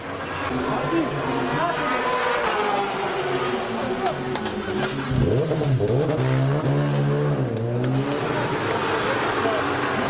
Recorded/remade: recorded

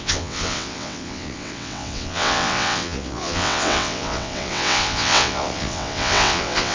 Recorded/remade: remade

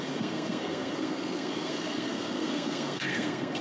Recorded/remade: remade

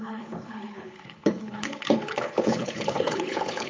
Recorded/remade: remade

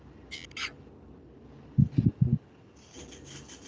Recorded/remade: recorded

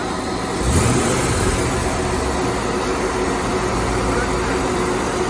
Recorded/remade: recorded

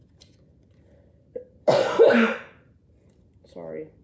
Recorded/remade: recorded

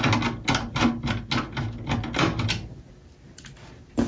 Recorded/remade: recorded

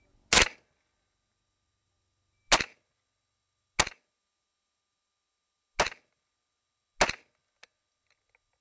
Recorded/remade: recorded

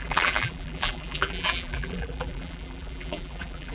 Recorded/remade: remade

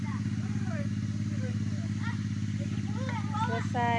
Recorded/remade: recorded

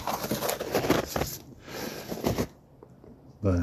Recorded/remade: recorded